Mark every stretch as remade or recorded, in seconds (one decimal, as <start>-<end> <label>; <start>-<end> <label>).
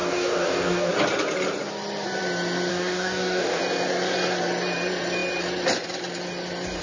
0.0-0.9 remade; 0.9-2.7 recorded; 2.7-3.6 remade; 3.6-6.8 recorded